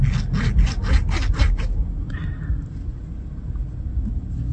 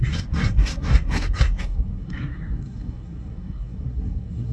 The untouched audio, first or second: first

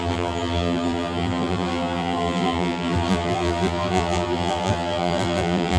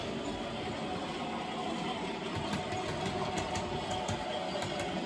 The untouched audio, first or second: second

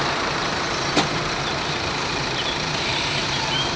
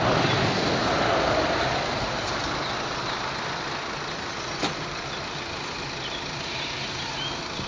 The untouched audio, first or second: second